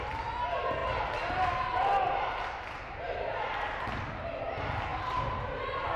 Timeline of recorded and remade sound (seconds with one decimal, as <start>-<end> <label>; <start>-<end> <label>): 0.0-6.0 recorded